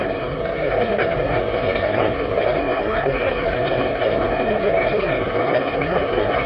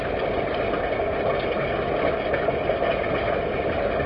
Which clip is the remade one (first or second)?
first